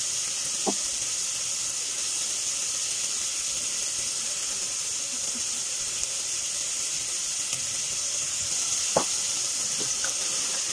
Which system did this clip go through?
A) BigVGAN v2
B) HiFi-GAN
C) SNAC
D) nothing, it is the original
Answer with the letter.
D